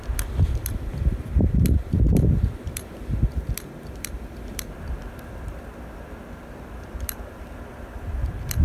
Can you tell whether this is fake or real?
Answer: fake